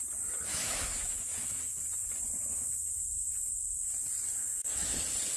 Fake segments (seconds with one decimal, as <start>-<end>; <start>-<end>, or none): 0.5-1.8; 2.5-3.9; 4.4-5.0